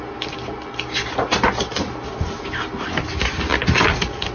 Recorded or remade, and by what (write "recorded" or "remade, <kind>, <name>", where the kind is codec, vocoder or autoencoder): recorded